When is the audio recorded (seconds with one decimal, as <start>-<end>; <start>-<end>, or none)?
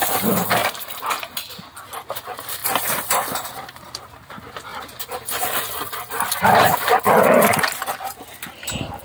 0.0-2.6; 4.3-9.0